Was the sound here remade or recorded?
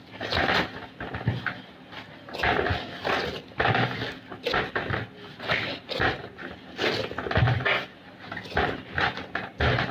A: recorded